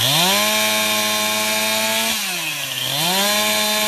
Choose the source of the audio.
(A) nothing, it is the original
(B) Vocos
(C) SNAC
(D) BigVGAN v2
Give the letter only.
A